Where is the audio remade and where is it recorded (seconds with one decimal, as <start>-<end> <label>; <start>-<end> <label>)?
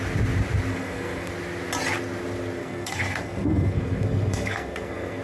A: 0.0-0.7 recorded; 0.7-1.3 remade; 1.3-2.6 recorded; 2.6-5.2 remade